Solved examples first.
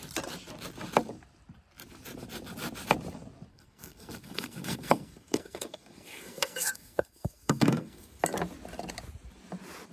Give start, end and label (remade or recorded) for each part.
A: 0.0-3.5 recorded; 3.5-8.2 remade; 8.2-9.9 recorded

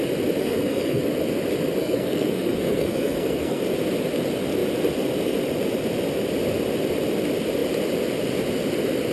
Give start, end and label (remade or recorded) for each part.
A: 0.0-0.4 recorded; 0.4-1.0 remade; 1.0-1.8 recorded; 1.8-3.6 remade; 3.6-9.1 recorded